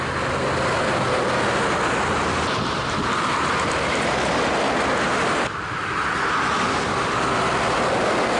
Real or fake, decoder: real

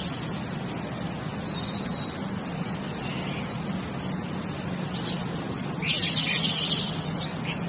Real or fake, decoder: real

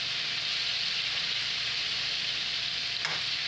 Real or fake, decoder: real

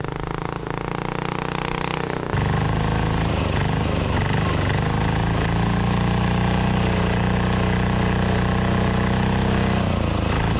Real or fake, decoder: real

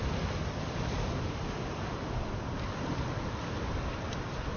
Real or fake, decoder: real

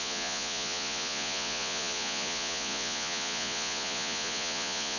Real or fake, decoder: fake, vocoder, Vocos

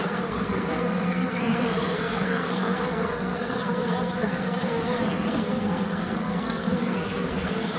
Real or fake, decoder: fake, codec, SNAC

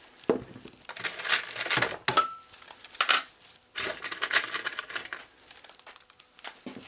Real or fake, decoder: real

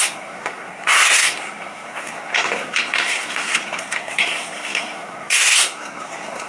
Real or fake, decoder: fake, codec, SNAC